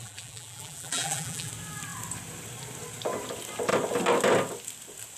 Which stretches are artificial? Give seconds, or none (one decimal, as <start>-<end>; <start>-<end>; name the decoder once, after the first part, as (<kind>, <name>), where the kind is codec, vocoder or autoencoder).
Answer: 0.0-1.5 (vocoder, BigVGAN v2)